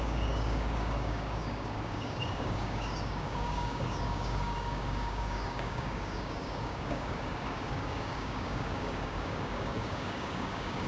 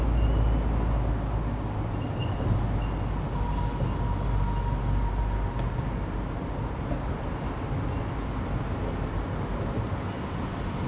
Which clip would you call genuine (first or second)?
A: second